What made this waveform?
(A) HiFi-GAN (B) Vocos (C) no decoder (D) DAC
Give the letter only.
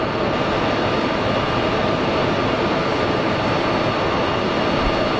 C